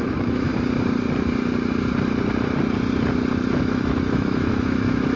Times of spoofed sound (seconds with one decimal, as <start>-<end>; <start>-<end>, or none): 0.0-0.5; 3.6-5.2